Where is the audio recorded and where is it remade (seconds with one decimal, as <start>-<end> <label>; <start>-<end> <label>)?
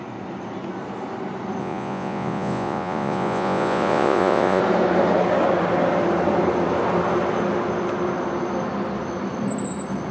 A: 0.0-1.6 recorded; 1.6-4.6 remade; 4.6-10.1 recorded